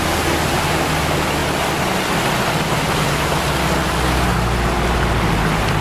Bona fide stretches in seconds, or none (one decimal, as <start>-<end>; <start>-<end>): 0.0-5.8